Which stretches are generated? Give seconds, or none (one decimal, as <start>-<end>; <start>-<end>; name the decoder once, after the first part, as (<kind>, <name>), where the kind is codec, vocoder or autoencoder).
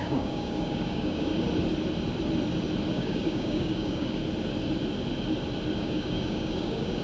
0.0-1.3 (codec, DAC); 2.9-4.2; 5.8-7.0